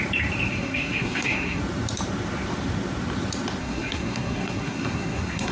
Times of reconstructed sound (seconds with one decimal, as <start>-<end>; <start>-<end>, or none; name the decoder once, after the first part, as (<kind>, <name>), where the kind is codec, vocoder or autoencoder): 0.5-1.6 (codec, SNAC); 3.6-5.5